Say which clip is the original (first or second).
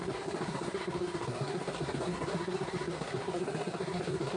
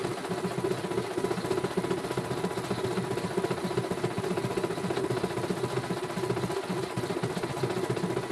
second